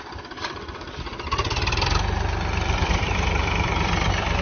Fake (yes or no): no